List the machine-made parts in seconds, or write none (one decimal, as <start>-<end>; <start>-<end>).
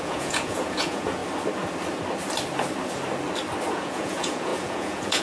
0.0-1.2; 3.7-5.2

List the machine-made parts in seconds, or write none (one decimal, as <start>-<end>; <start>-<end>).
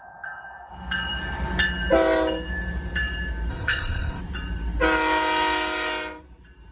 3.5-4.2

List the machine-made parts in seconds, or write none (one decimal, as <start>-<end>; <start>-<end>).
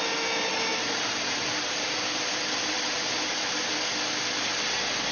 0.7-3.6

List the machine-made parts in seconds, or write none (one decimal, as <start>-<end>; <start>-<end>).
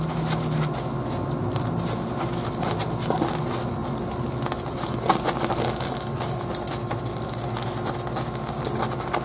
none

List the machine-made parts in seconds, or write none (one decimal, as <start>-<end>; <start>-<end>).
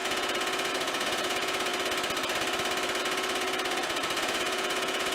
0.0-1.7; 3.0-5.1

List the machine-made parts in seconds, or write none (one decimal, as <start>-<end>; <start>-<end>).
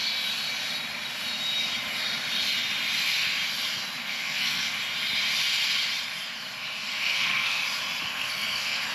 4.0-4.7; 6.9-7.6; 8.1-8.9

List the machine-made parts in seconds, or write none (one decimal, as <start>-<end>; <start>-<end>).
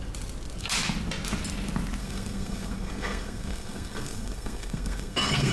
2.0-5.5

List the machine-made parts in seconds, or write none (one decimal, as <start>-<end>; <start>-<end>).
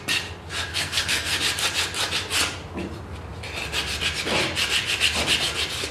0.7-1.4